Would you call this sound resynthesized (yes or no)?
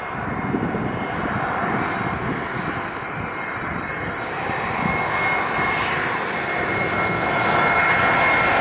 no